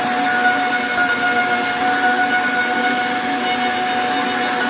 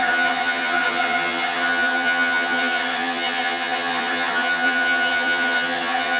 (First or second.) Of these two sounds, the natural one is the first